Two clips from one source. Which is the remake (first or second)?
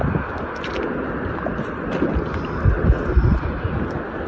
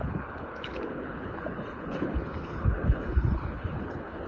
second